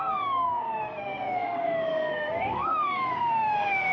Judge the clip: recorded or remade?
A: remade